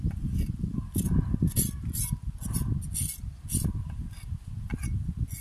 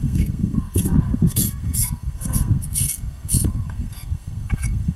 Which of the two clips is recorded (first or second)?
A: first